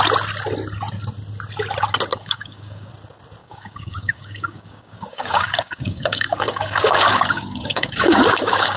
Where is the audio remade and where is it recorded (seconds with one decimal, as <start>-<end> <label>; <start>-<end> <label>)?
0.0-2.1 recorded; 2.1-2.9 remade; 2.9-3.4 recorded; 3.4-8.8 remade